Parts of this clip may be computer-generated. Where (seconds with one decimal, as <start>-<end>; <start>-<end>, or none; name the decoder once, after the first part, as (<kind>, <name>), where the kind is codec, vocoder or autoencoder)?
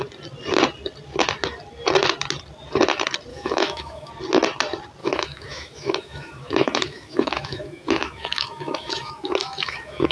3.3-4.1 (autoencoder, DAC-VAE); 5.0-10.1